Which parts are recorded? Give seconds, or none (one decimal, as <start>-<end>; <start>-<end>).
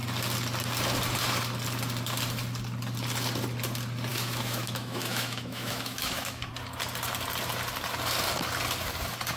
0.0-4.1; 6.5-9.4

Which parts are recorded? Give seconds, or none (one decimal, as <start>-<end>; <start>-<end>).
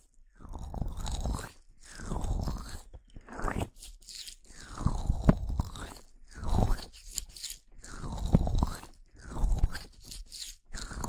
0.0-11.1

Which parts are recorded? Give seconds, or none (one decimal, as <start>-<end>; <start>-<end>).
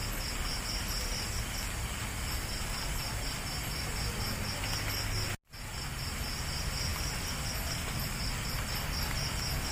0.0-9.7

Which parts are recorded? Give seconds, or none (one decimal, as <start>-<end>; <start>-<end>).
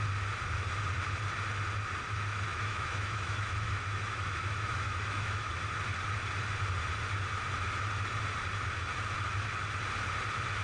0.0-2.5; 5.5-10.6